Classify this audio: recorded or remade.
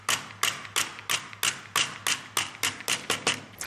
recorded